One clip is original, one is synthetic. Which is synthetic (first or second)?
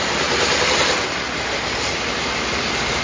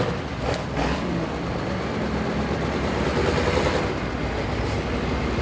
first